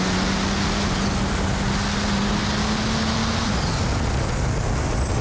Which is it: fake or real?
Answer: real